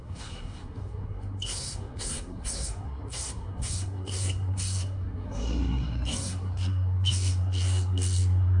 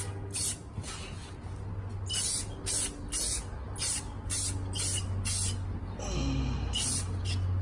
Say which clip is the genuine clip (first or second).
second